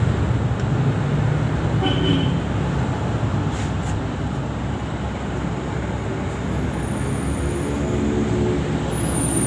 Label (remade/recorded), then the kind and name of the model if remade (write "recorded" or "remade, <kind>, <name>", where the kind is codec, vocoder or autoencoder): recorded